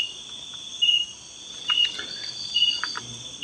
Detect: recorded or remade recorded